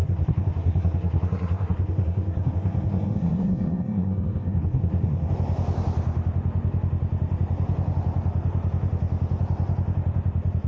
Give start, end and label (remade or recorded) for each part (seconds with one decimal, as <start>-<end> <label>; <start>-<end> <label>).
0.0-5.3 remade; 5.3-10.7 recorded